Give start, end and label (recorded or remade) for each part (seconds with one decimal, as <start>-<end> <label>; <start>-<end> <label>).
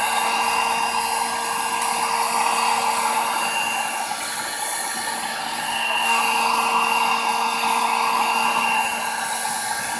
0.0-5.4 recorded; 5.4-6.2 remade; 6.2-10.0 recorded